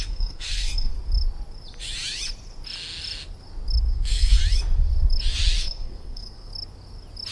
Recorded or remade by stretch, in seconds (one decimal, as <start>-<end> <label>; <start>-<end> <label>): 0.0-0.9 remade; 0.9-3.9 recorded; 3.9-4.4 remade; 4.4-5.6 recorded; 5.6-6.5 remade; 6.5-7.3 recorded